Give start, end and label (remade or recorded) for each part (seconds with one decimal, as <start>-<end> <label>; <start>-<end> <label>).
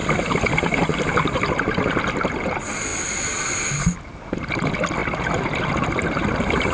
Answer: 0.0-6.7 recorded